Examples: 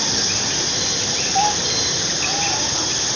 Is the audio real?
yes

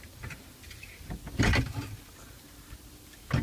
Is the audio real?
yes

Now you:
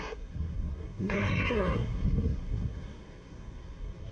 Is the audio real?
no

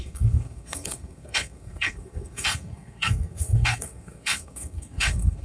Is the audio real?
no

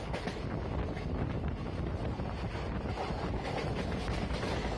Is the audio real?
yes